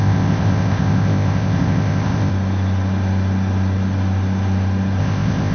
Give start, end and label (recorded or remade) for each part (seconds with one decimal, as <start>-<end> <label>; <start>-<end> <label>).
0.0-2.3 remade; 2.3-5.0 recorded; 5.0-5.5 remade